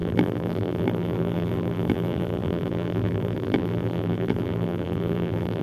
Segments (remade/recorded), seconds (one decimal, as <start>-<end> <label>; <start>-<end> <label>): 0.0-5.6 remade